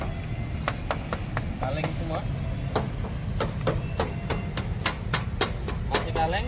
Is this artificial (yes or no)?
no